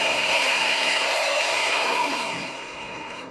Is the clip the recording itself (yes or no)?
no